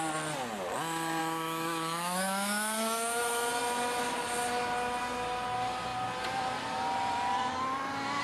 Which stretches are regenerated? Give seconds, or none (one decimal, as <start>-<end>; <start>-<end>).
1.2-3.5